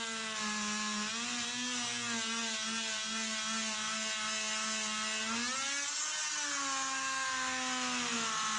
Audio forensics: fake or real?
real